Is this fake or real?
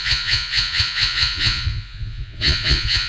fake